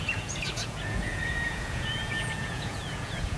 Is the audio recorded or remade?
remade